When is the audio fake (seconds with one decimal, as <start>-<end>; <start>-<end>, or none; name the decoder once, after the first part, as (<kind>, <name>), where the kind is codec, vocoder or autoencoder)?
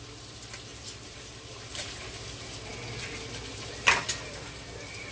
0.7-2.2 (vocoder, BigVGAN v2)